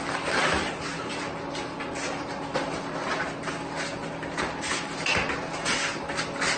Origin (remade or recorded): recorded